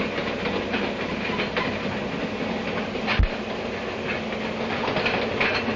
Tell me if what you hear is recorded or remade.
recorded